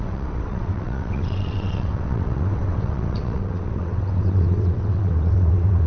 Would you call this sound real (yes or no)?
no